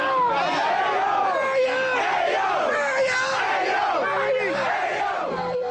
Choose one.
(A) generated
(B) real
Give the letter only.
B